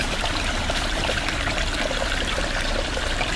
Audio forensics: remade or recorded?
remade